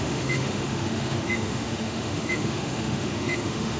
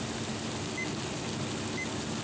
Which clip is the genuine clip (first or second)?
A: second